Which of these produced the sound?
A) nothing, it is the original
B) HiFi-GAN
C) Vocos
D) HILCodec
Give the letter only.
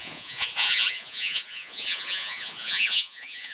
C